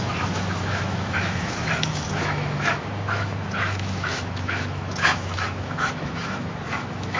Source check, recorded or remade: remade